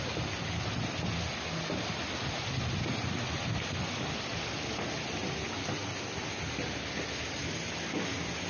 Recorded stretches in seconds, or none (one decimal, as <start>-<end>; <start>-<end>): 0.0-8.5